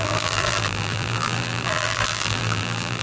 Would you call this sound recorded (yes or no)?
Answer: no